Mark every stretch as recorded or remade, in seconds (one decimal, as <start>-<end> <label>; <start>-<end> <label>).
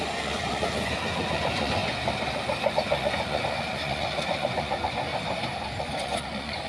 0.0-1.8 remade; 1.8-2.7 recorded; 2.7-5.1 remade; 5.1-5.8 recorded; 5.8-6.7 remade